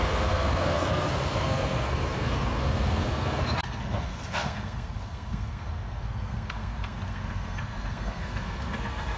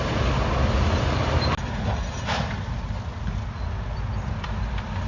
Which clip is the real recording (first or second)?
second